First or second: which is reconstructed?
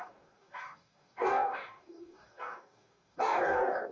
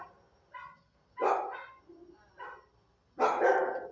first